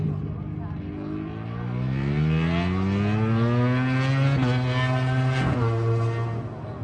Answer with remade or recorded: recorded